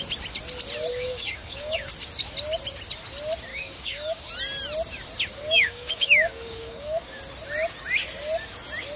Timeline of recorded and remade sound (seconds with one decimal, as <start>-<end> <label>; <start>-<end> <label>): 0.0-0.9 recorded; 0.9-1.9 remade; 1.9-3.5 recorded; 3.5-4.3 remade; 4.3-5.3 recorded; 5.3-7.2 remade; 7.2-9.0 recorded